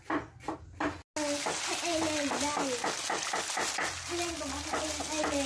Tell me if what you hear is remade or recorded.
recorded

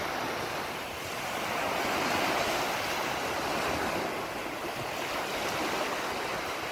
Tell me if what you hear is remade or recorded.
recorded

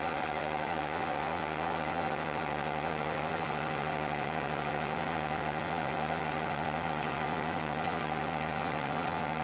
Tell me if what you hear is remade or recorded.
remade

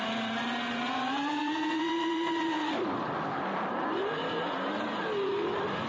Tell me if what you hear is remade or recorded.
recorded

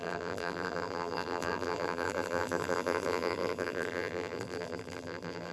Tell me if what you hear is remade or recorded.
remade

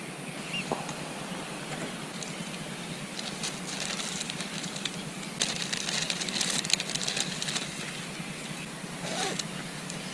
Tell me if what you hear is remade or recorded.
recorded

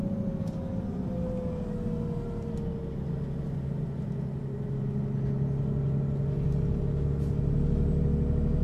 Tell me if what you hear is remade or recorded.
recorded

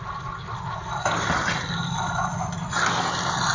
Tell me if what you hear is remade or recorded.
recorded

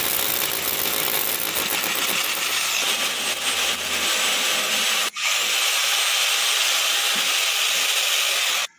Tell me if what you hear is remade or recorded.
recorded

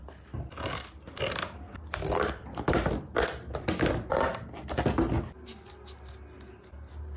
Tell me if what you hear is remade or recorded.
recorded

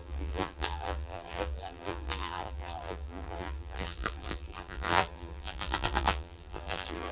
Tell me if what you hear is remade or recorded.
remade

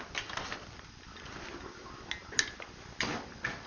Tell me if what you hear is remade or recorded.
recorded